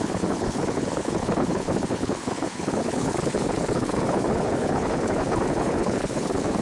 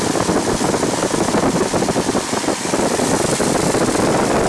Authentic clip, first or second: second